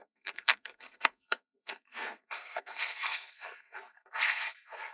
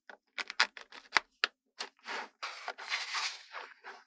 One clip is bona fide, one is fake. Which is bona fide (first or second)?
second